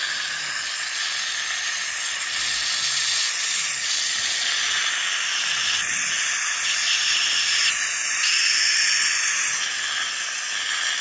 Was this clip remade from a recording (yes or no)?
no